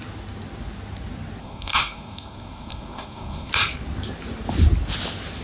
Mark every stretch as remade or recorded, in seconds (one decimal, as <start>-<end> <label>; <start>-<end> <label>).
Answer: 0.0-1.4 recorded; 1.4-3.5 remade; 3.5-5.4 recorded